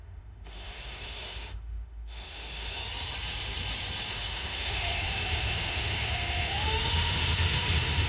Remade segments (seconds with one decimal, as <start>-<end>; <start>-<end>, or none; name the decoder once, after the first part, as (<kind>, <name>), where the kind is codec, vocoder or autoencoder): 0.0-2.8 (autoencoder, DAC-VAE); 4.1-8.1